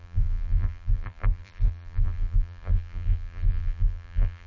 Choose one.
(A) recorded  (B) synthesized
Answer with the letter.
B